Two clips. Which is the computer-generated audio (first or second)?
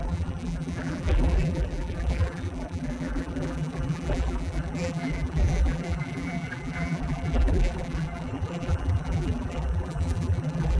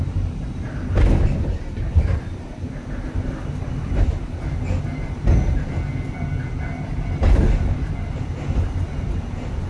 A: first